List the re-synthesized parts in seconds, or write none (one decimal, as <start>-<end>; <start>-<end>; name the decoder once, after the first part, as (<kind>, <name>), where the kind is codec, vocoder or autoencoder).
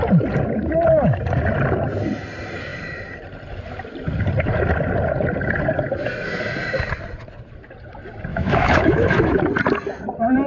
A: 8.3-9.4 (autoencoder, DAC-VAE)